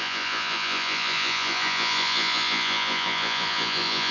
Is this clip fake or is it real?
fake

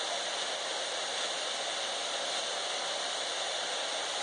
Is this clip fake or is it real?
fake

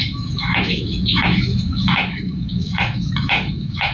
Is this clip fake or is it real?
fake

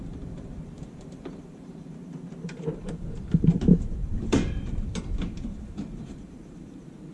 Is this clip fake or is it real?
fake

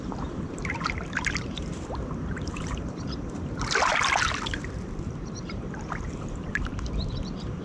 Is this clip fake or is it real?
fake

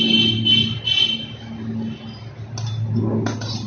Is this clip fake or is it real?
real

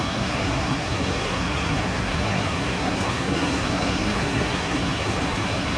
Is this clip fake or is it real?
fake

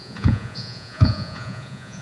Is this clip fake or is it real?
fake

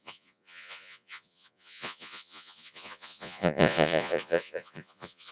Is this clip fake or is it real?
fake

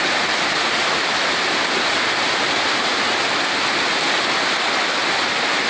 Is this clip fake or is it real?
real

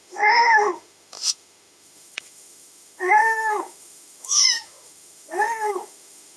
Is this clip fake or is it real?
fake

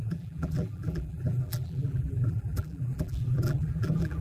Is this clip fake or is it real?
fake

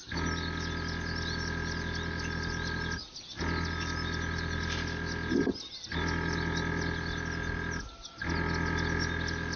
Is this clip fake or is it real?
real